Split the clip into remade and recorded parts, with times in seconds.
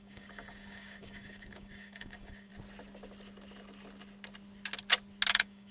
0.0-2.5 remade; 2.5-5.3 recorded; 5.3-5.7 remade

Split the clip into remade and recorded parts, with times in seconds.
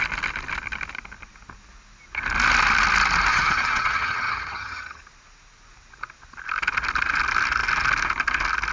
0.0-3.3 recorded; 3.3-5.0 remade; 5.0-8.7 recorded